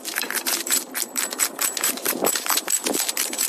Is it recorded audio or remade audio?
remade